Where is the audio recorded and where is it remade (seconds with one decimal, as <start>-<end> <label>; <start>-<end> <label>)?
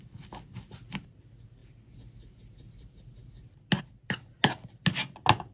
0.0-5.5 recorded